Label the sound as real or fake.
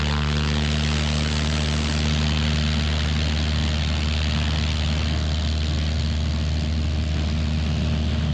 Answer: real